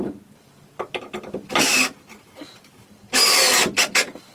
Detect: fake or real real